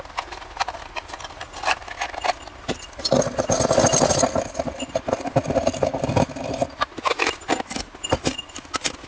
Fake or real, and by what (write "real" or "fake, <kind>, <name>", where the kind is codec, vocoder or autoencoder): real